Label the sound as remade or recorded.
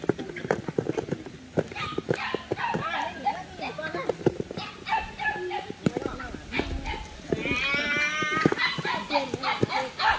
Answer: recorded